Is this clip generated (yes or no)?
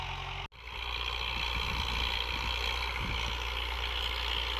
no